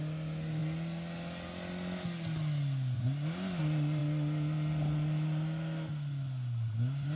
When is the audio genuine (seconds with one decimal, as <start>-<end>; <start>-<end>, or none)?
0.0-7.2